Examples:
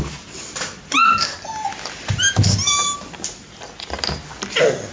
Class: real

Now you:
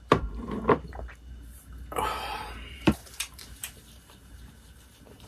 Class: fake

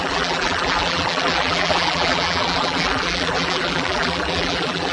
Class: fake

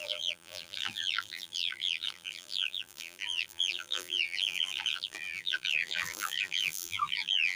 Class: fake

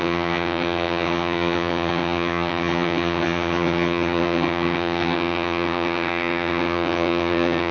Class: fake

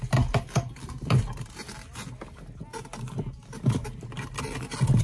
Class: real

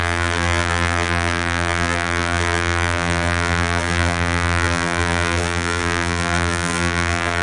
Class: fake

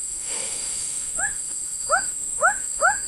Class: fake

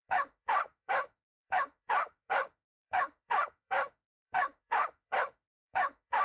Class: fake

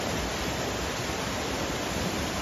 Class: real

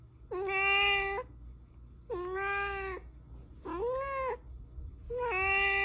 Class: real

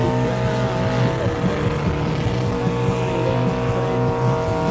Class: real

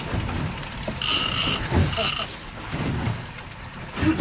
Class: real